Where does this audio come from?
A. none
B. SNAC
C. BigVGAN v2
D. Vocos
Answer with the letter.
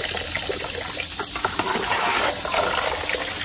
A